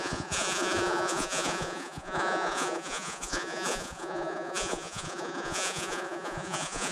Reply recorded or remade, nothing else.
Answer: remade